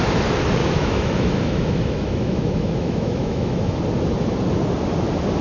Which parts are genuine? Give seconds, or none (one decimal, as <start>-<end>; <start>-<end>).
0.0-0.6; 3.8-5.4